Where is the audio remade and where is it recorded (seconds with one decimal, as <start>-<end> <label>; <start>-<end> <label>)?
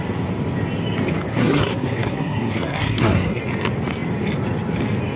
0.0-1.3 recorded; 1.3-3.4 remade; 3.4-5.2 recorded